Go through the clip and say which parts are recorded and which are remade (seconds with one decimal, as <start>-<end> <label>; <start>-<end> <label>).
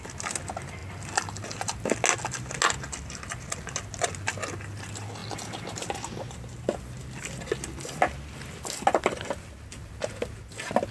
0.0-10.9 recorded